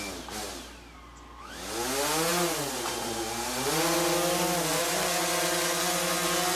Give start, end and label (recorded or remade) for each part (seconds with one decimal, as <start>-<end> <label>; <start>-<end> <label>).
0.0-6.6 recorded